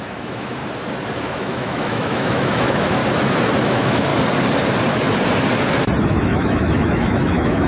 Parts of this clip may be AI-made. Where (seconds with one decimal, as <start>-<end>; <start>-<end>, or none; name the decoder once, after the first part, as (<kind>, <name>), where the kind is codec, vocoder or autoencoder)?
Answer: 0.0-0.6 (autoencoder, DAC-VAE); 1.2-3.0; 3.6-4.1; 6.0-7.7